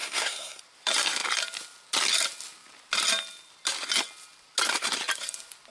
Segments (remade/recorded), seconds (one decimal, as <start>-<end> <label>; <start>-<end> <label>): 0.0-0.6 remade; 0.6-5.7 recorded